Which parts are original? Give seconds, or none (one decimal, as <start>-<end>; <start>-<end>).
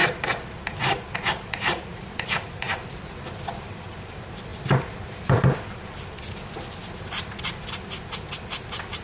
3.0-4.5; 6.3-6.8; 7.4-9.0